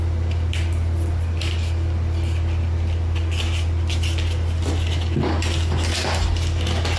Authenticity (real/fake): real